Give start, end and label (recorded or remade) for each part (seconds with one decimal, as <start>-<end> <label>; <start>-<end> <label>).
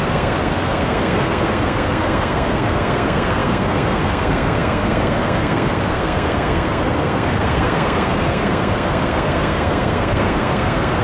0.0-11.0 remade